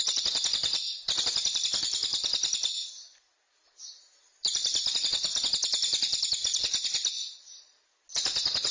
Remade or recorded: recorded